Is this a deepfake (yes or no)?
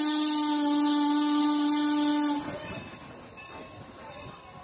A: no